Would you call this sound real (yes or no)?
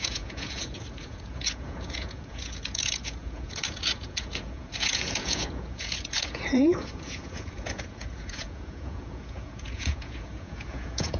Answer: no